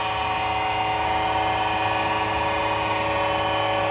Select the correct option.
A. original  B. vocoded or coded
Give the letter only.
A